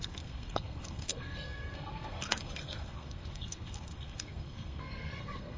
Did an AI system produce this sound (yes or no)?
yes